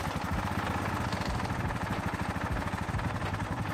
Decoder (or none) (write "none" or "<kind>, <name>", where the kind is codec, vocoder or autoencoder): none